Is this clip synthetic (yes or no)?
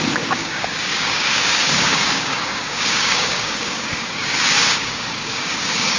yes